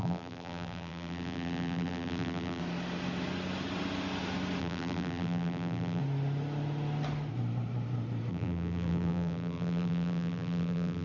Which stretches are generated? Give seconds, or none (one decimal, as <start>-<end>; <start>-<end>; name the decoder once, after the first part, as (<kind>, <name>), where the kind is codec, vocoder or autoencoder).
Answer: 0.0-2.6 (vocoder, BigVGAN v2); 4.6-6.0; 8.3-11.0